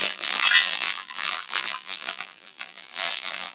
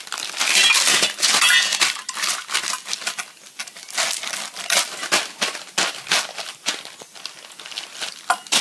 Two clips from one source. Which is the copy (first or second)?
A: first